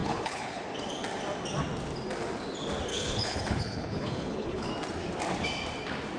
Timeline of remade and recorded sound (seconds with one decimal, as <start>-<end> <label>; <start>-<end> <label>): 0.0-0.6 remade; 0.6-2.9 recorded; 2.9-4.7 remade; 4.7-6.2 recorded